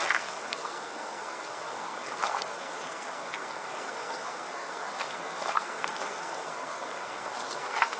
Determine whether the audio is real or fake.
fake